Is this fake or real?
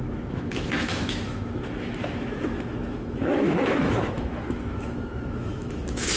fake